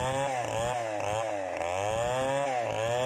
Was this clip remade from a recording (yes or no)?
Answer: no